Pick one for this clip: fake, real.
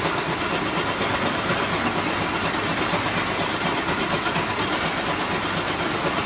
real